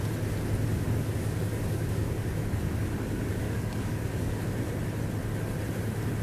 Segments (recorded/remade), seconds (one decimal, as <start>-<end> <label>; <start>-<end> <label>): 0.0-0.7 recorded; 0.7-4.4 remade; 4.4-6.2 recorded